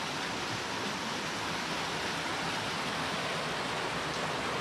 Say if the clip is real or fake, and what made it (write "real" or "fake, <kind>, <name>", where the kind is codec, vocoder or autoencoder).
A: real